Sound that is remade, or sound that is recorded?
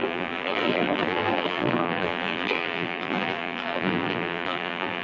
remade